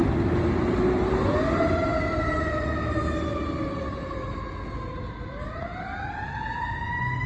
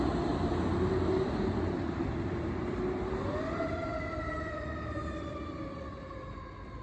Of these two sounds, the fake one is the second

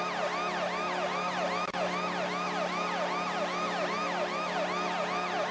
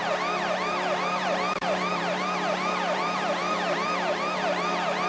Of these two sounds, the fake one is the second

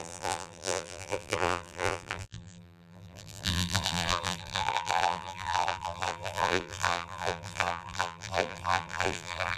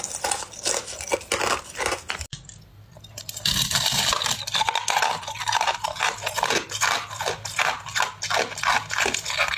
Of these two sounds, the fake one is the first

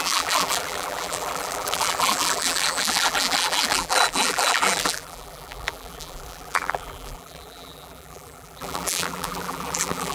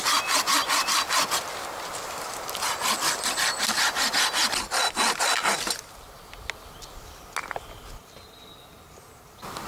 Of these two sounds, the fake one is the first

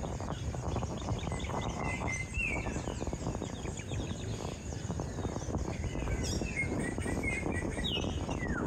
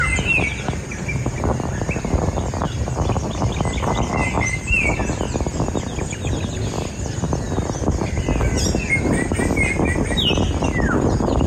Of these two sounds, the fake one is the first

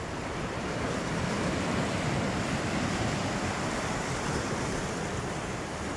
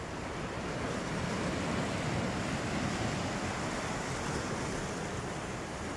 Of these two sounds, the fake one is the first